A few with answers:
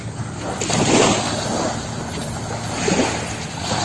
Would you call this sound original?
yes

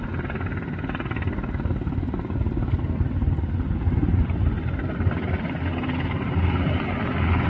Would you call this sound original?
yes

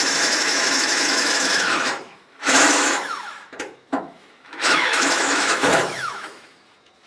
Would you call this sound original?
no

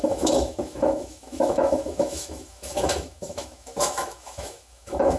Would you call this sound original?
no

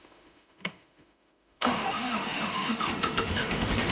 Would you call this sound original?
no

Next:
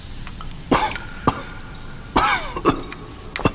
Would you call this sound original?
yes